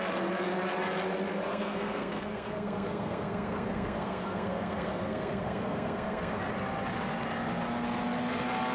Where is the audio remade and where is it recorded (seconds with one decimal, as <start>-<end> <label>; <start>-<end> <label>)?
0.0-1.5 recorded; 1.5-6.4 remade; 6.4-8.7 recorded